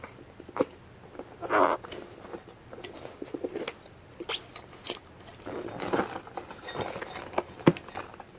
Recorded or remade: recorded